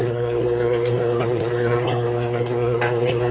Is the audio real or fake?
fake